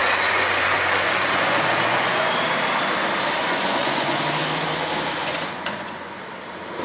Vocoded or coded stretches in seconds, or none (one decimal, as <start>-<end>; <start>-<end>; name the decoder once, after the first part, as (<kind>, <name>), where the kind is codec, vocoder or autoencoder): 0.0-2.3 (vocoder, Vocos); 3.4-4.2; 5.2-6.2